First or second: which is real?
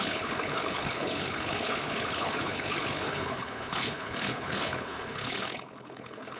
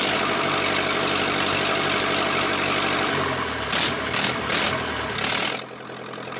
second